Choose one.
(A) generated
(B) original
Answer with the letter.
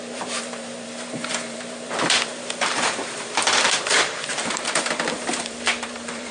A